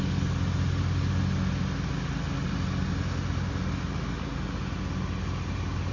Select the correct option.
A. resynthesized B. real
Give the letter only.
B